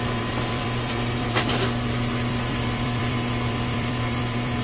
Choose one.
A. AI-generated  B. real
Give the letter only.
A